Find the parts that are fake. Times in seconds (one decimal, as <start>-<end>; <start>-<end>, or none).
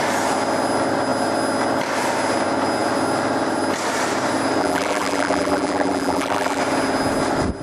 4.6-6.6